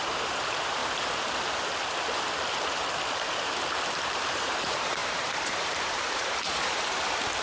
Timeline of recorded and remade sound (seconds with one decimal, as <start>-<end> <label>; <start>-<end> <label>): 0.0-0.8 remade; 0.8-4.1 recorded; 4.1-7.4 remade